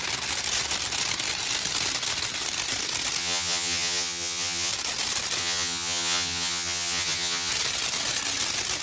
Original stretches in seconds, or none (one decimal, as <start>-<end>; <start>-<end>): 0.0-3.2; 4.7-5.4; 7.5-8.8